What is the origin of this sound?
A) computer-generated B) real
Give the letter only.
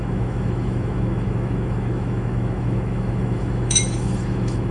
A